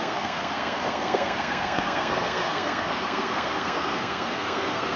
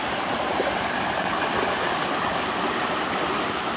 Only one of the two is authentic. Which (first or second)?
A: second